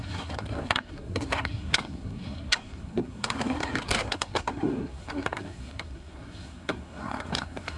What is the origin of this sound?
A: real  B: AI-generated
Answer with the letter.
B